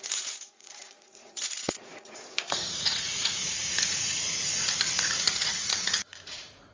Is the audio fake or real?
fake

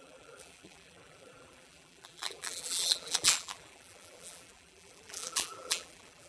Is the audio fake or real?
fake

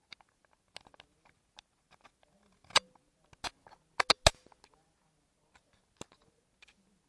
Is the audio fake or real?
real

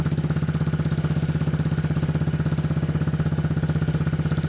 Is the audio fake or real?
real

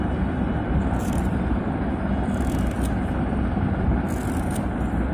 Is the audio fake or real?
real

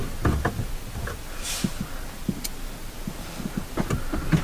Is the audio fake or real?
real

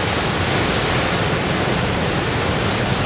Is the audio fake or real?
real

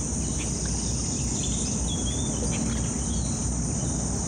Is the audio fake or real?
real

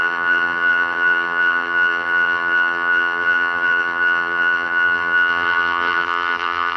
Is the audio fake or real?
fake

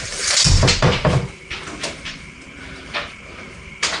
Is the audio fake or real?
fake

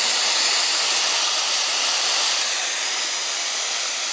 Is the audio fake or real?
real